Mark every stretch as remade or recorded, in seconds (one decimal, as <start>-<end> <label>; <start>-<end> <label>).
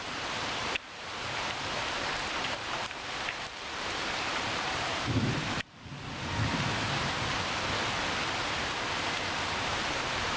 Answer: 0.0-5.9 remade; 5.9-9.4 recorded; 9.4-10.4 remade